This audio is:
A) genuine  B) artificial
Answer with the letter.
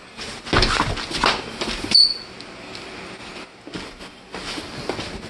A